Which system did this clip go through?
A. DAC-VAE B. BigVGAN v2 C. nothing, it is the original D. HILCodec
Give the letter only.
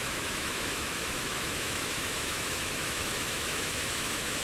A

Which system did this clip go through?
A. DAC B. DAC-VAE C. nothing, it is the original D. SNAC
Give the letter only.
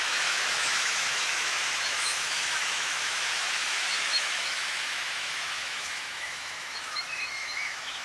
B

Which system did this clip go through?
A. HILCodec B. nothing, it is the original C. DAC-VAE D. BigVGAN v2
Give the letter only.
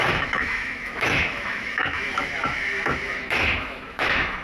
C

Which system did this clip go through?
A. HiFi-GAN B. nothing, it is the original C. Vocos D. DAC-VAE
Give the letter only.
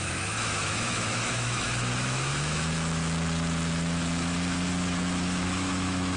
D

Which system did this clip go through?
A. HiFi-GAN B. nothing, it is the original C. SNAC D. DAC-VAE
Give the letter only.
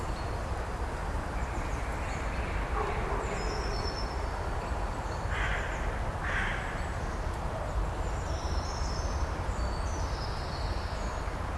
B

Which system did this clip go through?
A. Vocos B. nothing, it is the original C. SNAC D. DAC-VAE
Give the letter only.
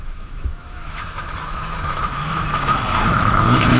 D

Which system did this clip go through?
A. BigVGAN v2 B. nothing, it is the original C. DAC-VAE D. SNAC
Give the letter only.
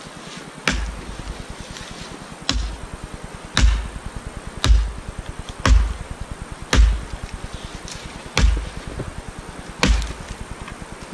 B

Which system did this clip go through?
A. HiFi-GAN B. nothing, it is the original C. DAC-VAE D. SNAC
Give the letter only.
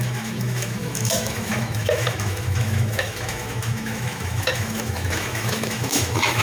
C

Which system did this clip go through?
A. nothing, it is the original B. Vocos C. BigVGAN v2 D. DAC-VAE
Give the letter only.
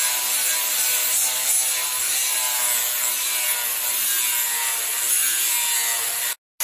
A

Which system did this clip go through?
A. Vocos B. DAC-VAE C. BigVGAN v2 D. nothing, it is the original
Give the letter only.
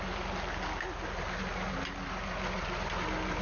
D